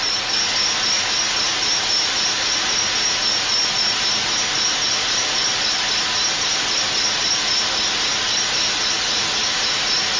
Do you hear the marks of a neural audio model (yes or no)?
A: no